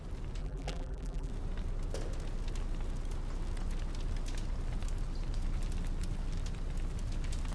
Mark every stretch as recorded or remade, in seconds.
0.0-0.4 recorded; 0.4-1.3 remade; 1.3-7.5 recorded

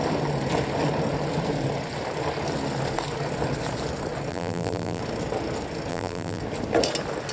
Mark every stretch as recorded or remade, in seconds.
0.0-4.3 recorded; 4.3-5.0 remade; 5.0-5.9 recorded; 5.9-6.4 remade; 6.4-7.3 recorded